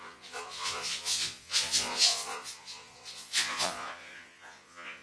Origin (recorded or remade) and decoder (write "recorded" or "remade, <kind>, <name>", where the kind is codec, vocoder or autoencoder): remade, vocoder, Vocos